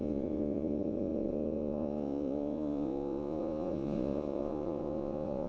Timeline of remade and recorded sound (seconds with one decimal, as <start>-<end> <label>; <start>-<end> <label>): 0.0-5.5 remade